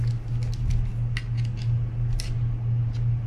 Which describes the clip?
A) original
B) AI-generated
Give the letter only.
A